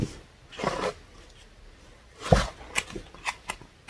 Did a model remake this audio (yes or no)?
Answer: no